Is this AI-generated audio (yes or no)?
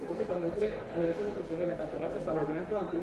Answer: yes